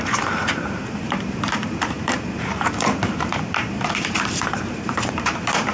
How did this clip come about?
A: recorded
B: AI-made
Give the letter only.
B